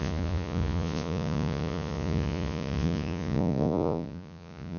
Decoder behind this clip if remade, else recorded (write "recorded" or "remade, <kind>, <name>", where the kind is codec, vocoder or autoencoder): remade, vocoder, Vocos